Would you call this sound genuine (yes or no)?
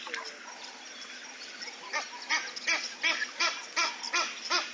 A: yes